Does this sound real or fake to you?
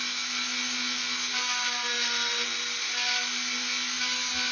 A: real